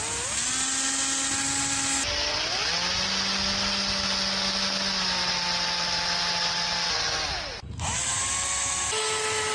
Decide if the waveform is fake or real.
real